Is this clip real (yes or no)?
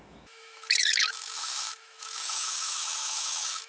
no